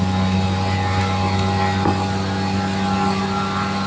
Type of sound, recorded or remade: recorded